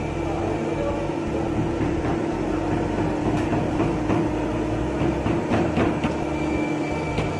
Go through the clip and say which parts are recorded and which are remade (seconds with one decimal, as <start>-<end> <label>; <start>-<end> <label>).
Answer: 0.0-7.4 recorded